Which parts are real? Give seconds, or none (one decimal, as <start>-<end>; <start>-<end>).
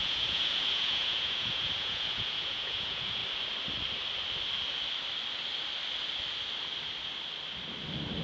3.2-8.2